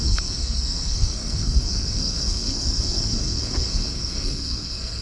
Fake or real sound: fake